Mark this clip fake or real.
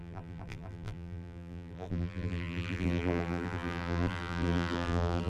fake